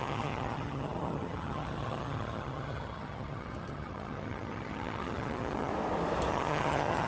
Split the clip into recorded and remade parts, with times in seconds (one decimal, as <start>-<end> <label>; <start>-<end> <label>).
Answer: 0.0-5.7 remade; 5.7-6.3 recorded; 6.3-7.1 remade